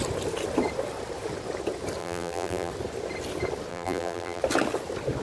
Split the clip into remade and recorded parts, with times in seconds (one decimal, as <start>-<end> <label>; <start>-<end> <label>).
0.0-2.0 recorded; 2.0-2.7 remade; 2.7-3.7 recorded; 3.7-4.4 remade; 4.4-5.2 recorded